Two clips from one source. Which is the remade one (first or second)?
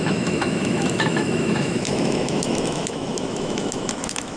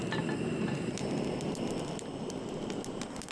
first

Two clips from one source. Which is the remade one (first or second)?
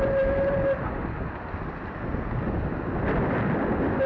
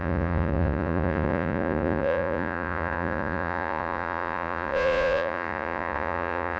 second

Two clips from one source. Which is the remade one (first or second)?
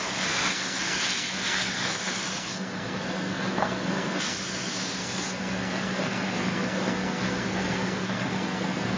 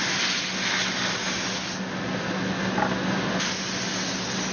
first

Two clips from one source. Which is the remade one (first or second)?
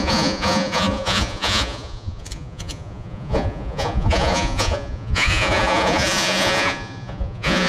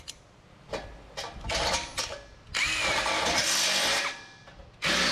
first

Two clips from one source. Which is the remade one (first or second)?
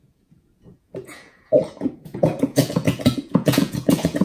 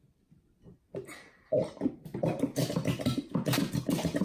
first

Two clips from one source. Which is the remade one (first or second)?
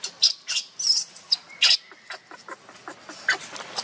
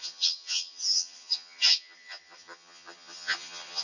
second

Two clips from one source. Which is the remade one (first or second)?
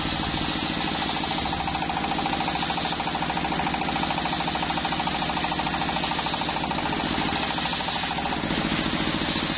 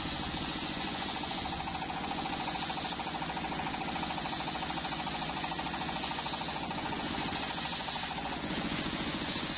second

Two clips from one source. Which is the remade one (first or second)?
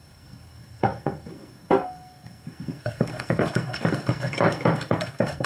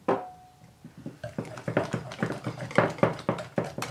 first